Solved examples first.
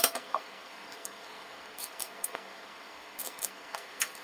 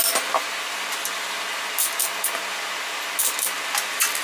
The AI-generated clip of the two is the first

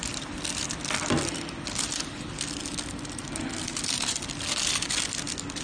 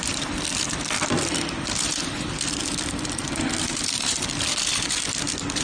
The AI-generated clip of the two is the second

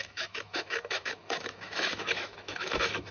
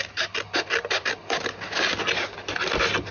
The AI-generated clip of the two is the first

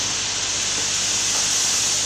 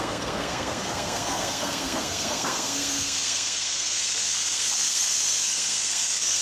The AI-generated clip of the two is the second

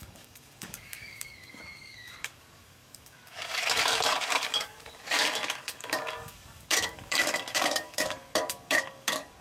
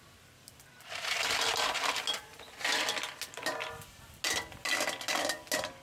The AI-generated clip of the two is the first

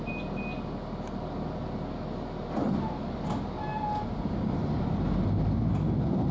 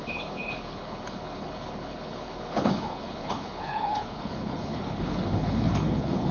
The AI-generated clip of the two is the second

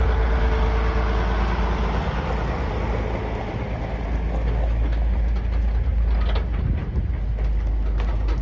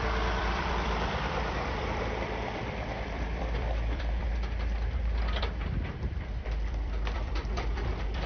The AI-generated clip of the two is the second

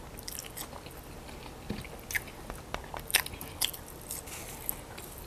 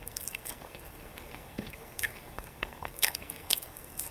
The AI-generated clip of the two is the second